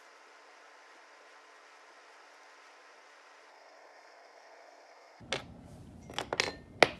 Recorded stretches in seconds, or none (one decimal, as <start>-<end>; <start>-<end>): 0.0-3.5; 5.2-7.0